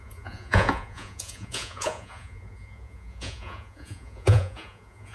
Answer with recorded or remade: remade